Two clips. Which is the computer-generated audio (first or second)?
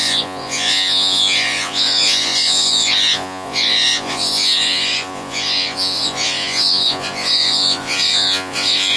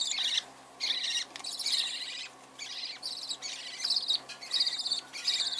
first